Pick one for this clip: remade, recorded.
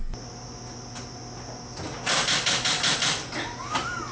recorded